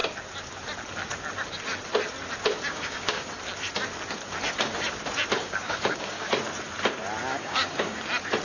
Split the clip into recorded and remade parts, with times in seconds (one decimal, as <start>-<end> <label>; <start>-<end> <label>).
0.0-2.7 recorded; 2.7-3.3 remade; 3.3-5.4 recorded; 5.4-6.3 remade; 6.3-7.3 recorded; 7.3-8.0 remade; 8.0-8.4 recorded